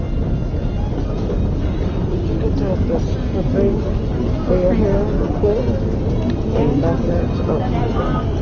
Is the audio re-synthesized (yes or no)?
no